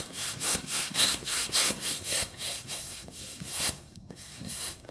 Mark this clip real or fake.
fake